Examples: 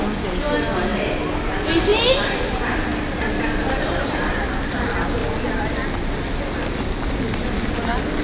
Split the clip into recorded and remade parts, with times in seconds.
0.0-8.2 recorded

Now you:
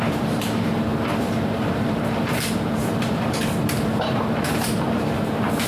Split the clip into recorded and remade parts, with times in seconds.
0.0-5.7 remade

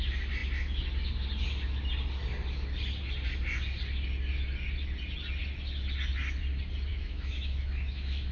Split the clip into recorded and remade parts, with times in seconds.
0.0-6.9 recorded; 6.9-8.3 remade

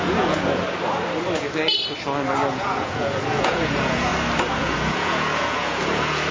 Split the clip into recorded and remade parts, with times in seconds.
0.0-0.6 remade; 0.6-2.5 recorded; 2.5-4.1 remade; 4.1-4.6 recorded; 4.6-6.3 remade

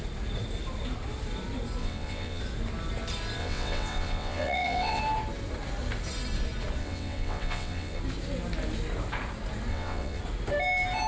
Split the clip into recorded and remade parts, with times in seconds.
0.0-1.8 recorded; 1.8-2.4 remade; 2.4-3.4 recorded; 3.4-5.0 remade; 5.0-6.8 recorded; 6.8-8.0 remade; 8.0-9.7 recorded; 9.7-10.2 remade; 10.2-11.1 recorded

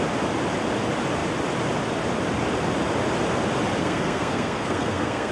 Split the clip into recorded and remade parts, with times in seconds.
0.0-3.8 recorded; 3.8-5.3 remade

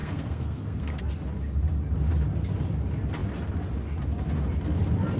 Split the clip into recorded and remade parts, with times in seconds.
0.0-1.0 remade; 1.0-5.2 recorded